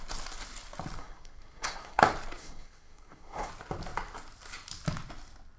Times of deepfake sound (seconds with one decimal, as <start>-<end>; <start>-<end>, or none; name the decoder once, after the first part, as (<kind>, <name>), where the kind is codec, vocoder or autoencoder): 1.0-2.0 (codec, SNAC); 2.4-3.5